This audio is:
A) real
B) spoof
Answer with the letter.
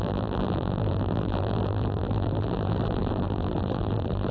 B